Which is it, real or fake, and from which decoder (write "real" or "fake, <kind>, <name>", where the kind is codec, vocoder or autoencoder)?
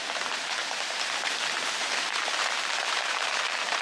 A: fake, vocoder, BigVGAN v2